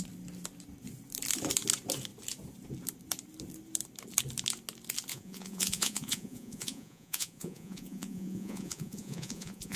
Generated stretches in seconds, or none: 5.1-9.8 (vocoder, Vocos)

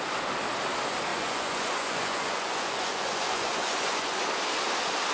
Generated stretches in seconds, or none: 1.1-4.2 (vocoder, Vocos)

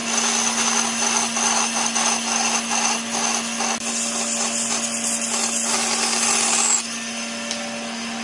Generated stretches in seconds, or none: none

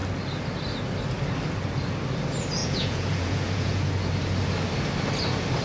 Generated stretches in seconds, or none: 2.6-3.9 (vocoder, Vocos)

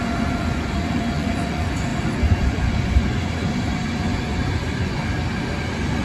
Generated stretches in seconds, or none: 0.0-5.0 (vocoder, Vocos); 5.6-6.0